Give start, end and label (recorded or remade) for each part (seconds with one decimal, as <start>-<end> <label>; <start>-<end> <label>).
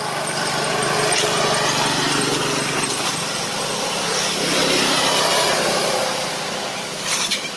0.0-7.6 recorded